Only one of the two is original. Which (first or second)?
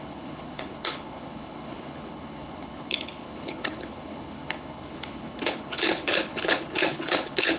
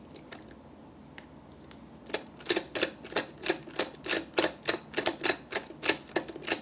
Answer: second